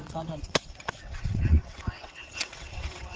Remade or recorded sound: remade